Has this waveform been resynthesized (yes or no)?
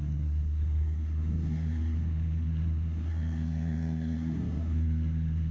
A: yes